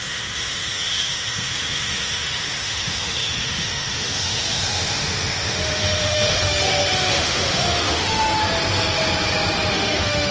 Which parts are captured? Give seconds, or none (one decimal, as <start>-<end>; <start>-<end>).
8.4-9.7